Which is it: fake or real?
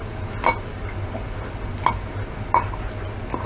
real